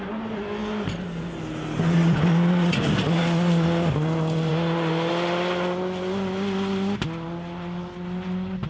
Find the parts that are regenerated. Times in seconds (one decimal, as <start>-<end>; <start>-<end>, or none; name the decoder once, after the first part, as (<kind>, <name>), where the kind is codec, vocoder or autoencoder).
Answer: none